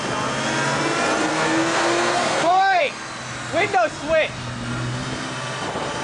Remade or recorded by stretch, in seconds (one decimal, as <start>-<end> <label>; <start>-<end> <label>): 0.0-1.3 recorded; 1.3-2.8 remade; 2.8-6.0 recorded

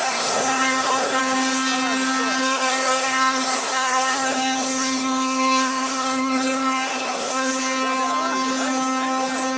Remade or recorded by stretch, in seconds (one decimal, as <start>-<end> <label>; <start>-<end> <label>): 0.0-1.2 remade; 1.2-2.4 recorded; 2.4-7.5 remade; 7.5-9.6 recorded